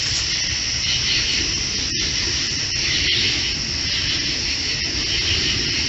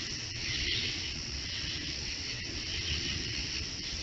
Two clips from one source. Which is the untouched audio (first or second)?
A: first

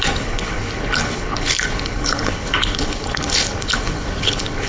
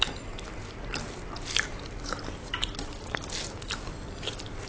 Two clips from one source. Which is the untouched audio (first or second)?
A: second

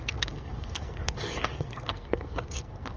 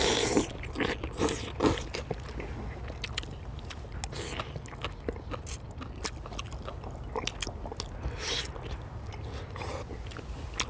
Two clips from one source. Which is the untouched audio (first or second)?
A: second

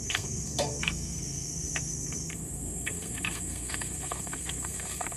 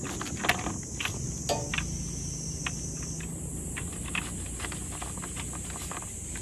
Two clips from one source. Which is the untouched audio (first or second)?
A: second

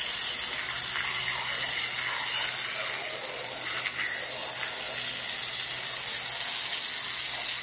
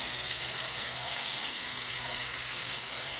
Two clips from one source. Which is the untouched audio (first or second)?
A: first